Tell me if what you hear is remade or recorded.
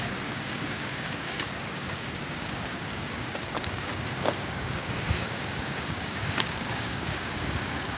remade